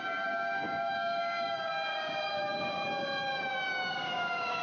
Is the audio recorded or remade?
remade